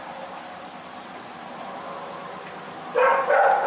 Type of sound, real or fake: real